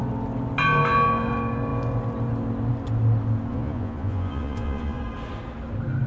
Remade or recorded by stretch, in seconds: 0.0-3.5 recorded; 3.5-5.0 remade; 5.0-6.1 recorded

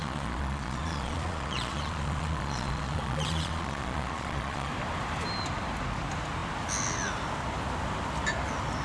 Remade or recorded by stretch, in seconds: 0.0-4.7 remade; 4.7-8.8 recorded

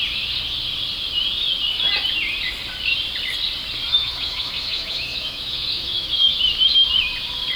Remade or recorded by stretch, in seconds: 0.0-3.9 recorded; 3.9-6.4 remade; 6.4-7.6 recorded

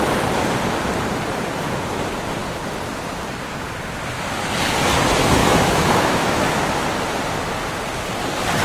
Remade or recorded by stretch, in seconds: 0.0-5.4 recorded; 5.4-6.6 remade; 6.6-8.6 recorded

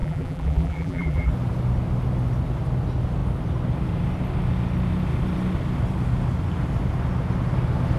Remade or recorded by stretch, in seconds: 0.0-1.3 remade; 1.3-8.0 recorded

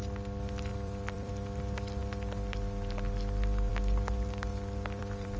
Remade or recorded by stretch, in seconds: 0.0-0.7 recorded; 0.7-1.3 remade; 1.3-4.5 recorded; 4.5-5.4 remade

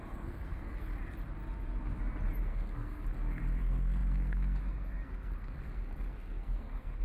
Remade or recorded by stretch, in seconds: 0.0-0.9 remade; 0.9-2.4 recorded; 2.4-7.0 remade